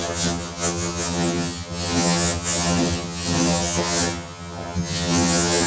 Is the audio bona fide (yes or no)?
no